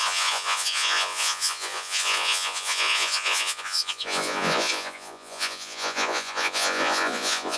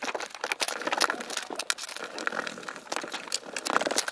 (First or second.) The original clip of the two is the second